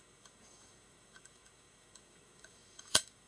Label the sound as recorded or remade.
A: remade